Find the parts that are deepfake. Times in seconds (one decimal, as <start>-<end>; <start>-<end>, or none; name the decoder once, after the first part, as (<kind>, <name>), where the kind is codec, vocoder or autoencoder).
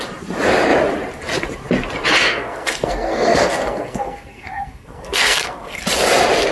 2.2-5.8 (codec, SNAC)